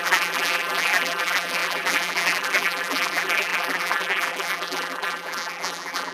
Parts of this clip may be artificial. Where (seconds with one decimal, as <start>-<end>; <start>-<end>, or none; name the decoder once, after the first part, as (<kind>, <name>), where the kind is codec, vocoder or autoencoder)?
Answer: 0.0-6.1 (vocoder, BigVGAN v2)